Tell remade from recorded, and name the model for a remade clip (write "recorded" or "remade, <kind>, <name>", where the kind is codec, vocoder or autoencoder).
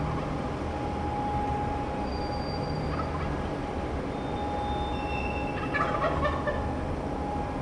recorded